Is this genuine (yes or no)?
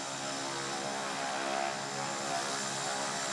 yes